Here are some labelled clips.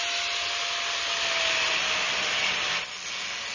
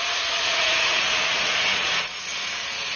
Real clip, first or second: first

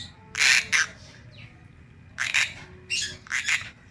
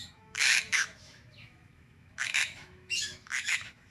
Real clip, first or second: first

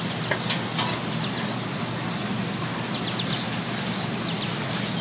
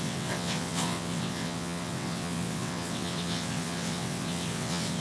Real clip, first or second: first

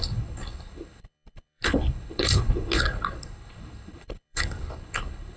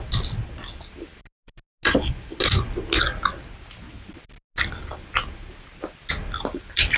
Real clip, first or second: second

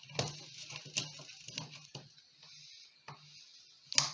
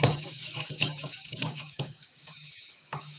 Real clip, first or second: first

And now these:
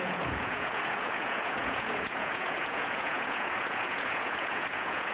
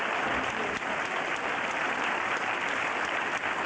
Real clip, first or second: second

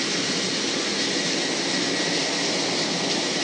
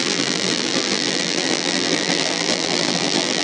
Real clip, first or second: first